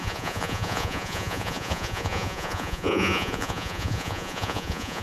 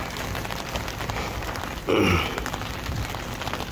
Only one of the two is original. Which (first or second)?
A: second